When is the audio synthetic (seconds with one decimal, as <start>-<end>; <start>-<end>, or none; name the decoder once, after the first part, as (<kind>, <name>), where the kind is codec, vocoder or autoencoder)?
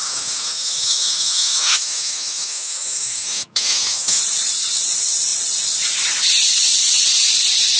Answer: 0.0-4.2 (autoencoder, DAC-VAE)